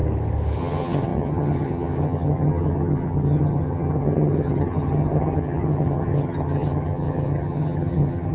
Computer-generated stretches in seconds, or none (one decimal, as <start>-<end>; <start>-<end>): 0.6-8.3